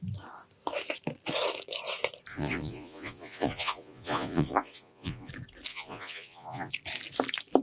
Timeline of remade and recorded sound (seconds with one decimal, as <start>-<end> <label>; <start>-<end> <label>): 0.0-2.3 recorded; 2.3-5.3 remade; 5.3-5.7 recorded; 5.7-6.7 remade; 6.7-7.6 recorded